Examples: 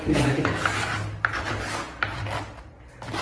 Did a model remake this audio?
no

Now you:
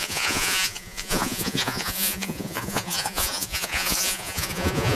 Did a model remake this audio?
yes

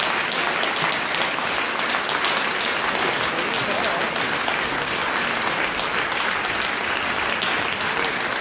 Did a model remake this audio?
no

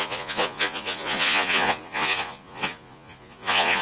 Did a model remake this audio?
yes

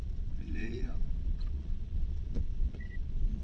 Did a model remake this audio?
yes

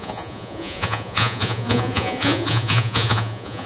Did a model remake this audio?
yes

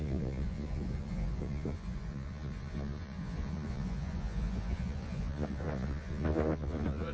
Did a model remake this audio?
yes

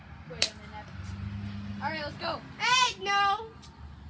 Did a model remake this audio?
no